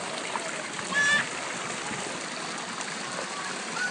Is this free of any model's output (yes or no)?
yes